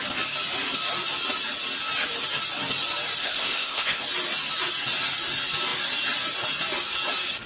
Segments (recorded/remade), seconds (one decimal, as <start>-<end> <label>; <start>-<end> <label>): 0.0-3.2 recorded; 3.2-4.0 remade; 4.0-7.5 recorded